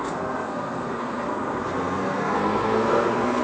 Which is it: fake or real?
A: fake